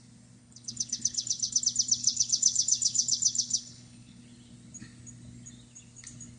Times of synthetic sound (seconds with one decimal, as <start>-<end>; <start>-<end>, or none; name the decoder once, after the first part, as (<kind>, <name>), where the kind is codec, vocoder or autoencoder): 0.4-1.6 (codec, HILCodec); 2.0-4.2